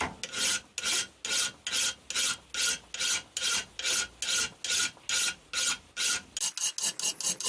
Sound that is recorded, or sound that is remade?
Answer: recorded